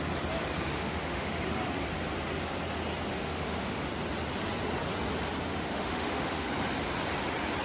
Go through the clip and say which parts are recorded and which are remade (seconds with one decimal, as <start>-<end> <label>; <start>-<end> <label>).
0.0-0.7 recorded; 0.7-1.4 remade; 1.4-3.1 recorded; 3.1-3.9 remade; 3.9-5.5 recorded; 5.5-6.5 remade; 6.5-7.6 recorded